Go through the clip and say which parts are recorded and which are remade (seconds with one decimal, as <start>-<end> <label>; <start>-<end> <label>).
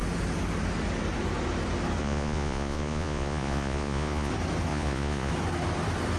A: 0.0-2.0 recorded; 2.0-4.3 remade; 4.3-4.7 recorded; 4.7-5.3 remade; 5.3-6.2 recorded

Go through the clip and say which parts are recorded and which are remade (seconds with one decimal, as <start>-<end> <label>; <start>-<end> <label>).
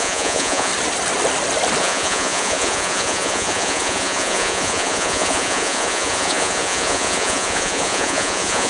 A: 0.0-0.7 remade; 0.7-1.8 recorded; 1.8-8.7 remade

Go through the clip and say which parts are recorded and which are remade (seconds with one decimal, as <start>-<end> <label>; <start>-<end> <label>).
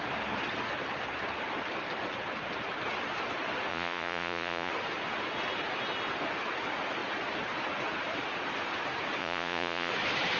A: 0.0-3.7 recorded; 3.7-4.7 remade; 4.7-9.2 recorded; 9.2-9.9 remade; 9.9-10.4 recorded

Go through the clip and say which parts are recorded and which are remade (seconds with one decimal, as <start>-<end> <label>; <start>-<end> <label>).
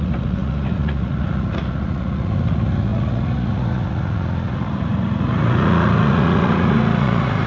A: 0.0-7.5 remade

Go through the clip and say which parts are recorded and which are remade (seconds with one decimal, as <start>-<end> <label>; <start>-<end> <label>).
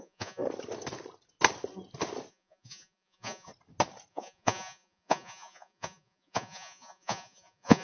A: 0.0-0.4 remade; 0.4-2.3 recorded; 2.3-3.5 remade; 3.5-4.1 recorded; 4.1-7.8 remade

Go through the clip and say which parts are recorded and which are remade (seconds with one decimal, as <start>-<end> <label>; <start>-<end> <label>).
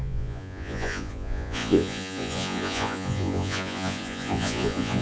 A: 0.0-5.0 remade